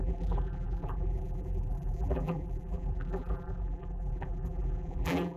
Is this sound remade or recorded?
remade